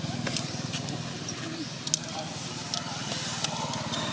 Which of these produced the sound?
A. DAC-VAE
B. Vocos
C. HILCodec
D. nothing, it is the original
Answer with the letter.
D